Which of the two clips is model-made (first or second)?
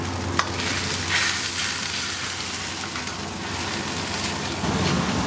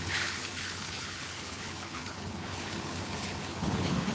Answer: second